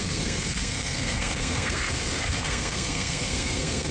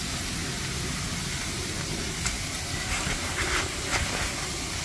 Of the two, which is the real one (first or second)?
second